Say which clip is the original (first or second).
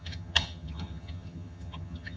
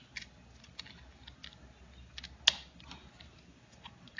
second